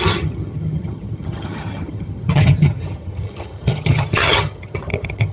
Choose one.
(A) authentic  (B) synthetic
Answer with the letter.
B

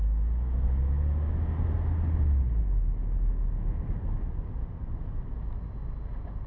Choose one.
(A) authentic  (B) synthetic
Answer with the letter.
A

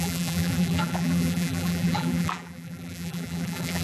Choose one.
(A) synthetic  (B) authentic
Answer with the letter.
A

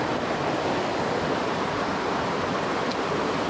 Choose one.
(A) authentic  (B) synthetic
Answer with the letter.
A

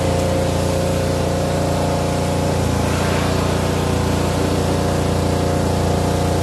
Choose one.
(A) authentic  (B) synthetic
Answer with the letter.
A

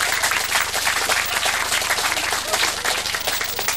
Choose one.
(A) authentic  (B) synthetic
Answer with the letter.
A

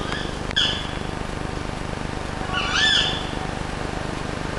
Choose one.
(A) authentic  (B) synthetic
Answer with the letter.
A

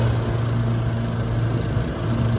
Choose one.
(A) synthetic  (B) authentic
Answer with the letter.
B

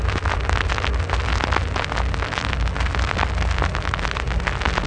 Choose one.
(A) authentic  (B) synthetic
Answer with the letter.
A